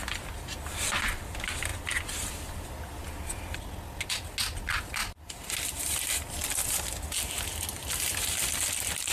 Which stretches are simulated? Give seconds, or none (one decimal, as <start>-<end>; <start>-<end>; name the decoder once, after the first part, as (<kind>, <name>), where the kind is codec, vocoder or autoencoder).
none